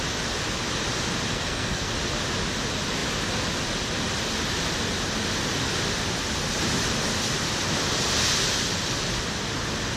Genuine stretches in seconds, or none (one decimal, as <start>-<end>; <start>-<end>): 0.0-1.3; 1.9-10.0